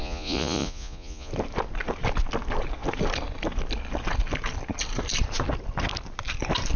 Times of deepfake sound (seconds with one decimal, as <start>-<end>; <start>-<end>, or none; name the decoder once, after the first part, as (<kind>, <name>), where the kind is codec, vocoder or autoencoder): 0.0-1.3 (vocoder, Vocos)